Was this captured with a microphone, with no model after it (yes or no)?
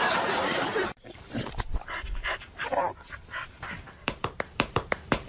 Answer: no